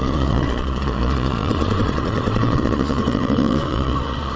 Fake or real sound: fake